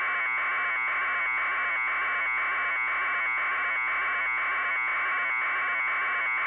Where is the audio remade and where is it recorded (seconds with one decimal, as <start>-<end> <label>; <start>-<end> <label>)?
0.0-6.5 recorded